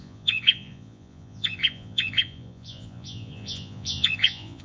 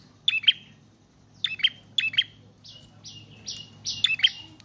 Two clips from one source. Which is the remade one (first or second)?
first